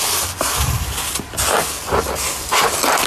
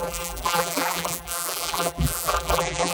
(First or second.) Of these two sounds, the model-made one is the second